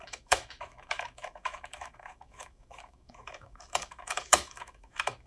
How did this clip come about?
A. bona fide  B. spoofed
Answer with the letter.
B